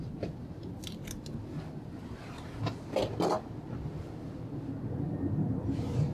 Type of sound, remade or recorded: recorded